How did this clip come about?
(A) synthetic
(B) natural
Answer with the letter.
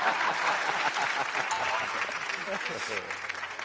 B